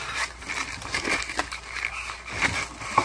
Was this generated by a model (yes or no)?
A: no